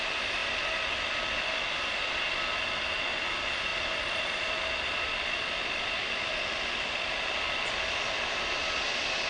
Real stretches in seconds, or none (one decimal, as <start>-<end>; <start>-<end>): 0.0-3.7; 7.0-9.3